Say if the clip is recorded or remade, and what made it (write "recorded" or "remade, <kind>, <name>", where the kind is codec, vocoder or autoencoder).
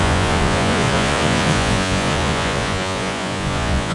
remade, vocoder, Vocos